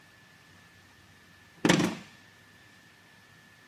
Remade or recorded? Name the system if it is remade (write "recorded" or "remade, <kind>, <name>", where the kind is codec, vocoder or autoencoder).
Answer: recorded